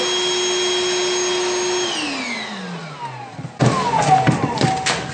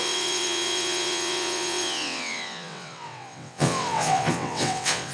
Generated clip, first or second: second